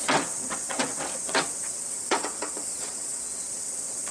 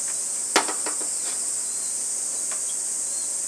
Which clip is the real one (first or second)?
second